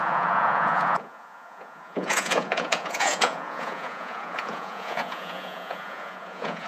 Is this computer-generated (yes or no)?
yes